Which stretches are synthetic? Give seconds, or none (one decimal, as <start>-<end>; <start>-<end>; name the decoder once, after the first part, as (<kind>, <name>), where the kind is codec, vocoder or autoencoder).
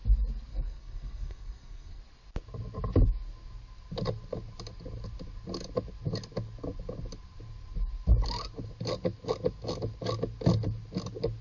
0.5-2.0 (codec, SNAC)